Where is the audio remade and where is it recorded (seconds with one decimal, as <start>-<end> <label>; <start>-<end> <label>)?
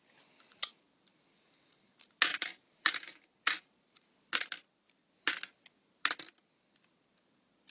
0.0-2.3 recorded; 2.3-4.1 remade; 4.1-7.7 recorded